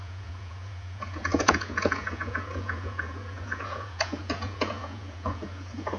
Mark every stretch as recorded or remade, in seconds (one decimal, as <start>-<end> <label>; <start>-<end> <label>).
0.0-6.0 remade